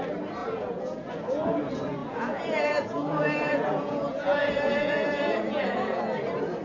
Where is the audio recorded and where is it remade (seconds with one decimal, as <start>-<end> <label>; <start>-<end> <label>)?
0.0-0.4 recorded; 0.4-1.1 remade; 1.1-2.0 recorded; 2.0-6.0 remade; 6.0-6.6 recorded